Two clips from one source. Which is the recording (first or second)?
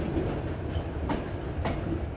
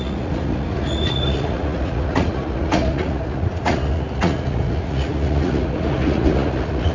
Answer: first